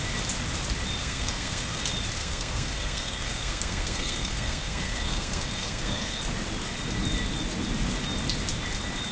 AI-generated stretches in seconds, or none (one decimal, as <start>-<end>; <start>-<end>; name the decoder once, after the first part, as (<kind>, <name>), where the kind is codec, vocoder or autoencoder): 1.0-1.8 (codec, SNAC); 2.2-6.2